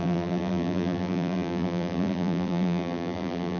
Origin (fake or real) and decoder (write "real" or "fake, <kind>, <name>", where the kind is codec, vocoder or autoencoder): fake, vocoder, BigVGAN v2